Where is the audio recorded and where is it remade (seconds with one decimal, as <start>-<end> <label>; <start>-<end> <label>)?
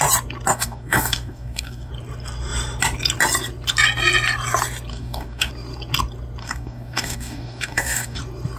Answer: 0.0-0.5 recorded; 0.5-1.9 remade; 1.9-4.9 recorded; 4.9-5.5 remade; 5.5-6.4 recorded; 6.4-8.2 remade; 8.2-8.6 recorded